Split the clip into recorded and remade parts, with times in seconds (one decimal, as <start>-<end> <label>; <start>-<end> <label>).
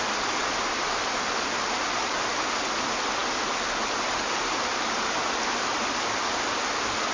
0.0-7.1 recorded